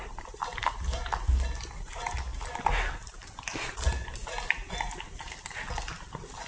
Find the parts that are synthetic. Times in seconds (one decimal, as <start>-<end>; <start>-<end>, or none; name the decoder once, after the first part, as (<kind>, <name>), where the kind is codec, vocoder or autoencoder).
none